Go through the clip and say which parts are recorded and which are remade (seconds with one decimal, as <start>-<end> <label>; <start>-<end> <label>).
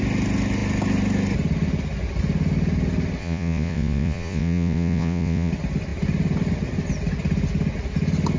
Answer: 0.0-3.2 recorded; 3.2-5.5 remade; 5.5-8.4 recorded